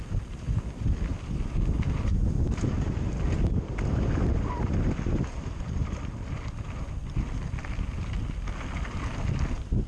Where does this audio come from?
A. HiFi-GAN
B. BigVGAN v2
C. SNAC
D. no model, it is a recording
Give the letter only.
D